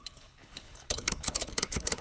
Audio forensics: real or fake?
fake